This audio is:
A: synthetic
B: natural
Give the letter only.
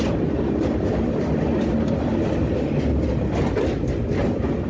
B